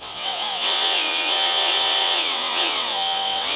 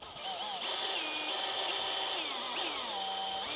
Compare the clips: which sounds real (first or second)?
second